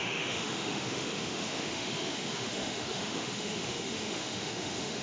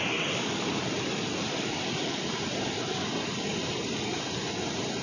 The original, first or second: second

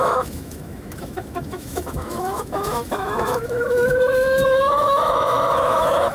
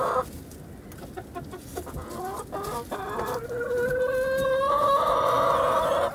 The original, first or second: second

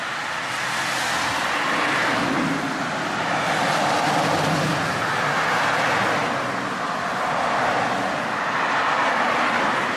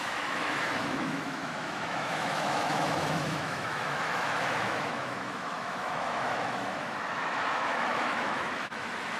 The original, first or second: first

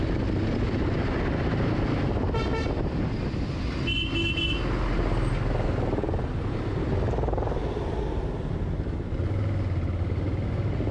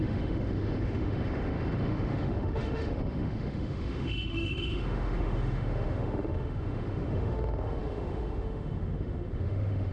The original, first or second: first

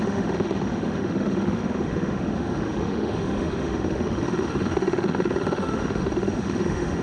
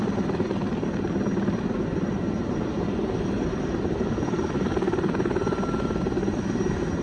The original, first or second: second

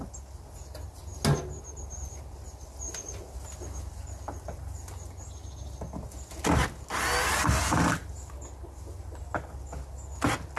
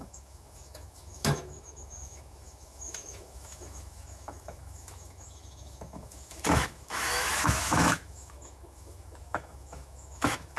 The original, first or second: first